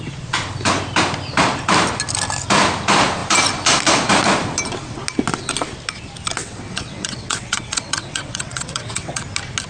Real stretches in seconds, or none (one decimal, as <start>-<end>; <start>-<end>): 0.0-6.4; 9.2-9.7